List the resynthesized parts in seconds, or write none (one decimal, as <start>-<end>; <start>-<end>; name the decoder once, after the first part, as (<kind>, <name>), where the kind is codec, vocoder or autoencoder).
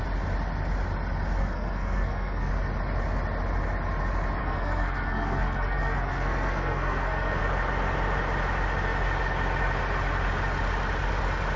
1.4-2.5 (codec, SNAC); 4.4-7.4